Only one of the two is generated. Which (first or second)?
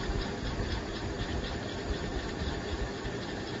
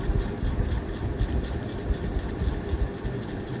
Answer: first